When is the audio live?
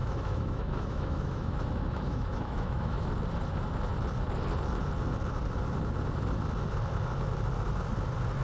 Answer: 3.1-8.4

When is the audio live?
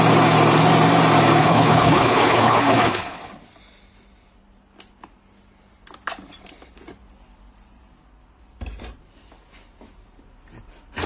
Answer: 0.0-1.4; 3.2-11.1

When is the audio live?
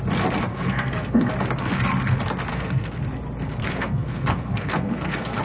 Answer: 0.0-0.5; 1.3-2.5; 3.0-3.6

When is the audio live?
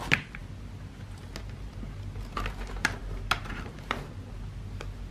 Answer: 0.0-5.1